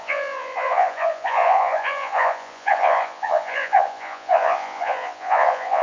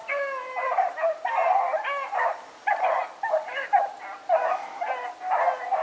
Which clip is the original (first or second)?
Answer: second